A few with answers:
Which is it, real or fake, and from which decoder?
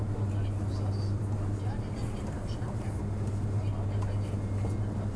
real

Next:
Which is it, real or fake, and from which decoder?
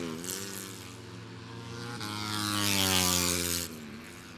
real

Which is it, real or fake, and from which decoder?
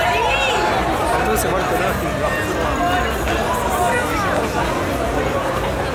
real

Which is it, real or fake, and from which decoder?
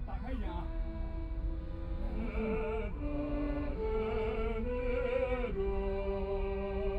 real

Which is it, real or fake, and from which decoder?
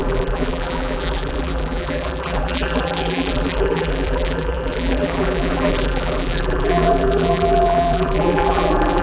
fake, vocoder, BigVGAN v2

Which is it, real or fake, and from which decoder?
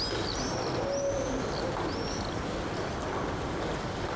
real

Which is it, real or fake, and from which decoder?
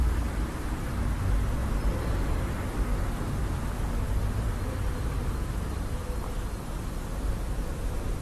fake, vocoder, BigVGAN v2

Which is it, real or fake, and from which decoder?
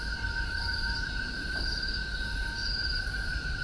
fake, vocoder, BigVGAN v2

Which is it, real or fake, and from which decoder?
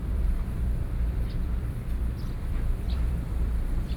fake, vocoder, BigVGAN v2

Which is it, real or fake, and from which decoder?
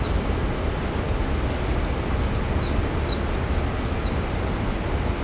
real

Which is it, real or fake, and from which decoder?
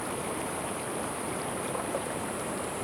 fake, vocoder, BigVGAN v2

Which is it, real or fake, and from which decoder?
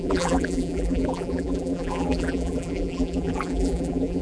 fake, vocoder, BigVGAN v2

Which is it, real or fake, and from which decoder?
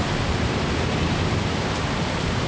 fake, vocoder, BigVGAN v2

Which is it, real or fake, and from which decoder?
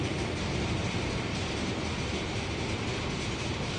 real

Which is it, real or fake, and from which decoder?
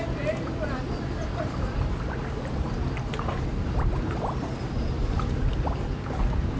fake, vocoder, BigVGAN v2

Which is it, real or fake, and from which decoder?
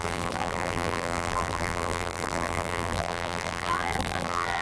fake, vocoder, BigVGAN v2